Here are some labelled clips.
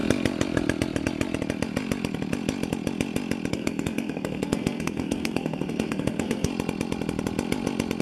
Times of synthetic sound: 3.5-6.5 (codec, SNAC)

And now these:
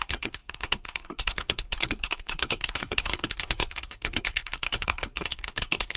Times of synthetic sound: 0.0-6.0 (codec, SNAC)

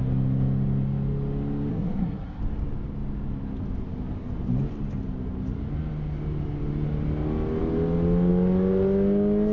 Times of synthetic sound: 1.7-2.4 (codec, SNAC)